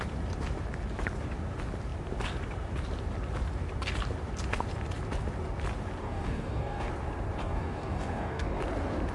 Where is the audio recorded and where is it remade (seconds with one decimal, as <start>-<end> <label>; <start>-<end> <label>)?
0.0-6.0 recorded; 6.0-6.9 remade; 6.9-7.4 recorded; 7.4-8.6 remade; 8.6-9.1 recorded